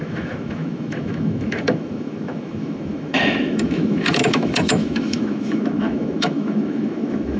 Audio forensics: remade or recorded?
remade